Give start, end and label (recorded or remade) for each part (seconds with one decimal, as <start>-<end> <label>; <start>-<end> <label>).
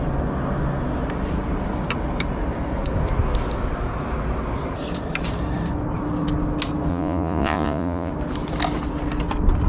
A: 0.0-6.9 recorded; 6.9-8.1 remade; 8.1-9.7 recorded